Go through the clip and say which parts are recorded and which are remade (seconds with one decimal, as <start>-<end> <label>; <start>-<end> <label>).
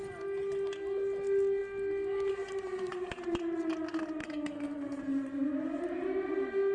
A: 0.0-4.2 recorded; 4.2-5.0 remade; 5.0-6.7 recorded